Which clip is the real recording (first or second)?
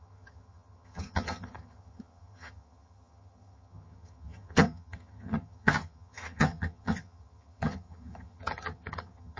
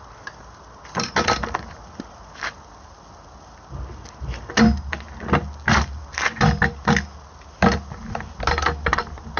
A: second